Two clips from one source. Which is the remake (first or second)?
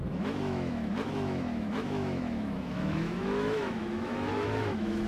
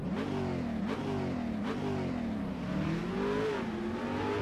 first